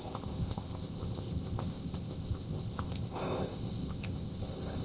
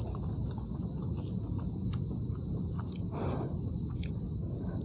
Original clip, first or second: second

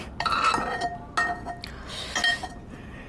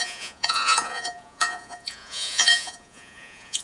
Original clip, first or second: first